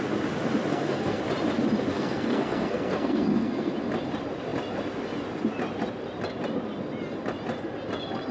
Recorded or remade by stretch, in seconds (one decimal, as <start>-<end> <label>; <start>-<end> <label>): 0.0-0.7 recorded; 0.7-1.2 remade; 1.2-1.9 recorded; 1.9-3.7 remade; 3.7-8.3 recorded